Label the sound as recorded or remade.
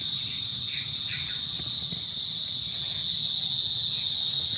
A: recorded